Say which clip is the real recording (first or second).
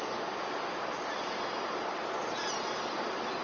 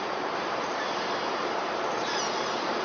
first